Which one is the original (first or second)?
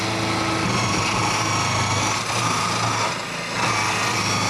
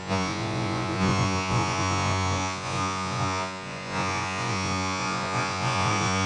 first